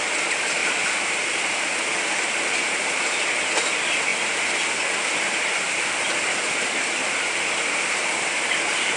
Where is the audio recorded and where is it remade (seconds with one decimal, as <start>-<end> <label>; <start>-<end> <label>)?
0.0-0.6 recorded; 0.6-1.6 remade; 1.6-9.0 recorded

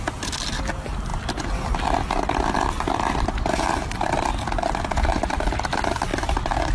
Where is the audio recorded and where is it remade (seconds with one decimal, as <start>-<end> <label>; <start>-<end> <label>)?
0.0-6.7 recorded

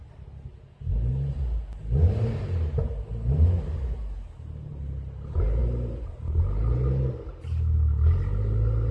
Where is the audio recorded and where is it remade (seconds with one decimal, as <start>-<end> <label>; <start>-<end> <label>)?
0.0-8.9 recorded

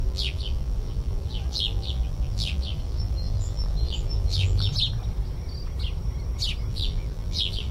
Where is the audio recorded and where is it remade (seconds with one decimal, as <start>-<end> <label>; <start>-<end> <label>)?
0.0-4.7 remade; 4.7-6.7 recorded; 6.7-7.7 remade

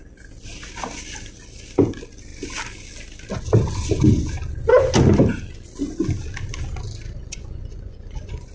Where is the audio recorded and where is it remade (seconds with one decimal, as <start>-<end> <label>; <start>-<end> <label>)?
0.0-7.2 recorded; 7.2-8.5 remade

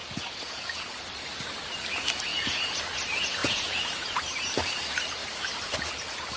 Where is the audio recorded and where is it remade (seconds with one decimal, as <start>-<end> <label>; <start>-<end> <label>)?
0.0-1.0 remade; 1.0-2.3 recorded; 2.3-2.8 remade; 2.8-3.4 recorded; 3.4-4.2 remade; 4.2-6.4 recorded

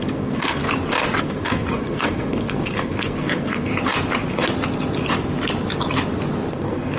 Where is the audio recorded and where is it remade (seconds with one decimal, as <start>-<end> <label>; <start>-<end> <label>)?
0.0-0.6 remade; 0.6-1.2 recorded; 1.2-3.7 remade; 3.7-6.5 recorded; 6.5-7.0 remade

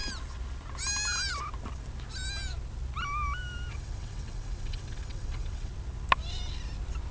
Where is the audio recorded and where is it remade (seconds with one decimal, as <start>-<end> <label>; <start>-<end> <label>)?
0.0-3.7 recorded; 3.7-5.7 remade; 5.7-7.1 recorded